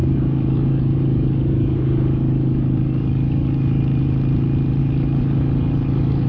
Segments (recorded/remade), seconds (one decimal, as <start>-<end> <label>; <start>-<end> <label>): 0.0-3.8 remade; 3.8-4.8 recorded; 4.8-6.3 remade

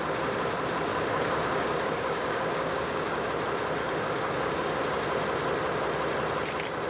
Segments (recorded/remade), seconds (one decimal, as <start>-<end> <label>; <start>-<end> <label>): 0.0-0.9 recorded; 0.9-3.3 remade; 3.3-3.8 recorded; 3.8-4.8 remade; 4.8-6.9 recorded

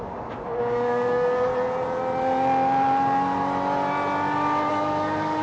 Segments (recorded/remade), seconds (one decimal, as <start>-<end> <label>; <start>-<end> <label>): 0.0-1.5 remade; 1.5-4.7 recorded; 4.7-5.4 remade